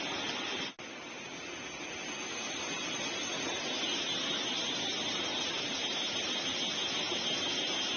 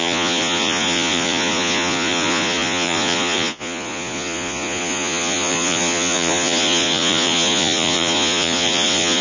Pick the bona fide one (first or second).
first